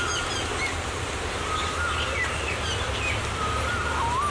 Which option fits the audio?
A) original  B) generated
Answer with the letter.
A